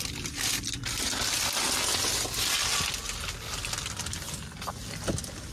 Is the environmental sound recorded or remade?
recorded